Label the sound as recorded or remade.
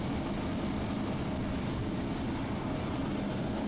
recorded